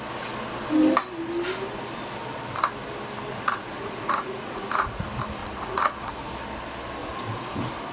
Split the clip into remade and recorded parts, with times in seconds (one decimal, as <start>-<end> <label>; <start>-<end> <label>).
0.0-3.3 recorded; 3.3-5.0 remade; 5.0-5.4 recorded; 5.4-6.3 remade; 6.3-7.0 recorded; 7.0-7.9 remade

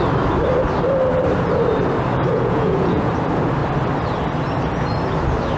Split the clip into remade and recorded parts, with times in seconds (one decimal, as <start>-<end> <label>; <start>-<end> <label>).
0.0-2.3 recorded; 2.3-3.1 remade; 3.1-5.6 recorded

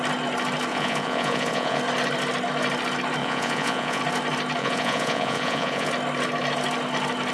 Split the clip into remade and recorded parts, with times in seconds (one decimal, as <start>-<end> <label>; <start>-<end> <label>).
0.0-0.7 recorded; 0.7-1.8 remade; 1.8-3.2 recorded; 3.2-4.0 remade; 4.0-4.6 recorded; 4.6-5.9 remade; 5.9-7.3 recorded

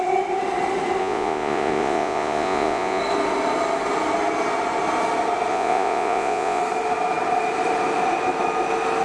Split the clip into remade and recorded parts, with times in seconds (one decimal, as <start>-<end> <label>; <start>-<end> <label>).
0.0-1.0 recorded; 1.0-3.0 remade; 3.0-5.5 recorded; 5.5-6.6 remade; 6.6-9.0 recorded

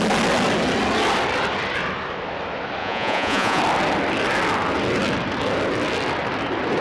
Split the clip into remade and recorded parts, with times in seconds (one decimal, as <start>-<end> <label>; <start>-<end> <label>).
0.0-2.8 recorded; 2.8-3.6 remade; 3.6-6.8 recorded

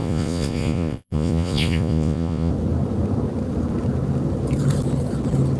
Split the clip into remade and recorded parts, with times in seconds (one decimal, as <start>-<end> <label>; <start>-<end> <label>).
0.0-2.5 remade; 2.5-5.6 recorded

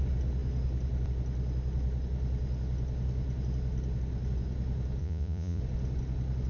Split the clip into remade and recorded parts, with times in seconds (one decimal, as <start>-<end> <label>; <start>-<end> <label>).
0.0-5.0 recorded; 5.0-5.6 remade; 5.6-6.5 recorded